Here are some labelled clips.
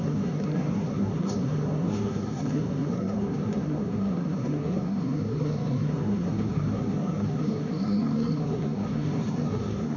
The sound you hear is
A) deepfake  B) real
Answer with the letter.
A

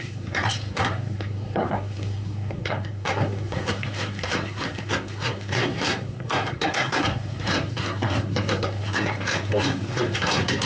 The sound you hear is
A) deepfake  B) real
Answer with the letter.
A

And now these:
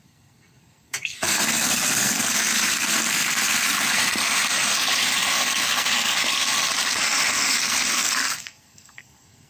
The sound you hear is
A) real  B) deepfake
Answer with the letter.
B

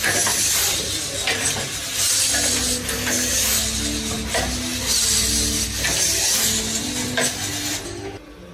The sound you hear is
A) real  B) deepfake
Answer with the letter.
A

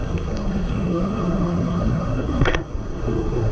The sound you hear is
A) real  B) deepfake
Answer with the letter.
B